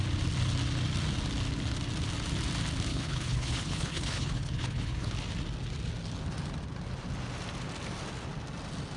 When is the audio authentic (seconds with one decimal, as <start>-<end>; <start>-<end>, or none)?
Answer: 0.0-2.9; 5.1-9.0